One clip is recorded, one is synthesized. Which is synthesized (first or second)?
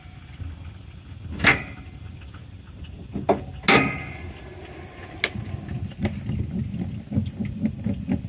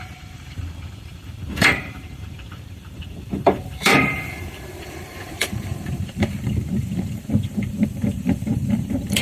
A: second